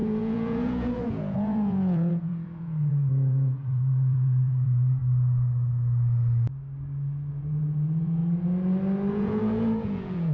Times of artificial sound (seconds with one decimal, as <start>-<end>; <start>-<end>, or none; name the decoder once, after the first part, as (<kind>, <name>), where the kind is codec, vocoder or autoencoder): 0.0-5.0 (vocoder, Vocos); 7.3-8.2; 9.1-10.3